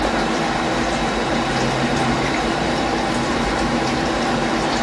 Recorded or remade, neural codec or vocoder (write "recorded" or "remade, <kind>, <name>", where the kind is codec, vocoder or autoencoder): remade, vocoder, BigVGAN v2